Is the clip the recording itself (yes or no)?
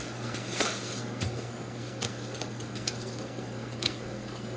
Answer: no